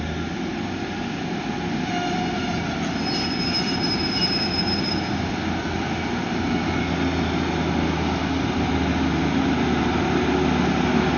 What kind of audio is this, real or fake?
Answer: real